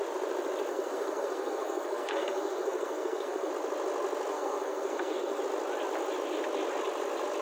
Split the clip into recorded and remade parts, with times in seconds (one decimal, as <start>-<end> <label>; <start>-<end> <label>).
0.0-0.7 recorded; 0.7-3.5 remade; 3.5-4.3 recorded; 4.3-5.4 remade; 5.4-7.4 recorded